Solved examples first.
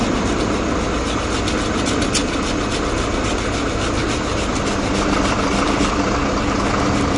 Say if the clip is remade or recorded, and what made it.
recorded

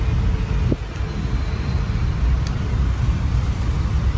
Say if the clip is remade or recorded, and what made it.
recorded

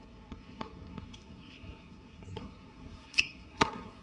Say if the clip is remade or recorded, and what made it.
remade, codec, SNAC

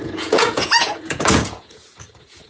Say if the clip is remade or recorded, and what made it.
remade, vocoder, Vocos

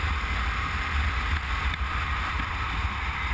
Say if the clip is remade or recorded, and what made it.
recorded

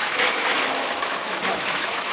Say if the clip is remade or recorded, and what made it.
remade, autoencoder, DAC-VAE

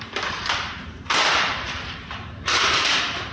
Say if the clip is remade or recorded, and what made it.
remade, vocoder, BigVGAN v2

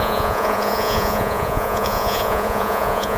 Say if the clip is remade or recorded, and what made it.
remade, vocoder, Vocos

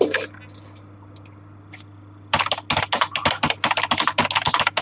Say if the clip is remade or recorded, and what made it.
recorded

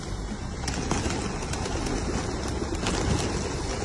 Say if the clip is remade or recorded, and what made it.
recorded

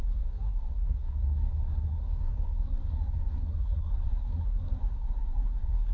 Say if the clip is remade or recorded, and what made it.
remade, codec, SNAC